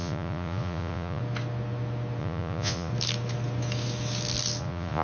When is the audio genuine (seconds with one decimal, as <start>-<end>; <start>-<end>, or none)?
1.2-2.2; 2.9-4.6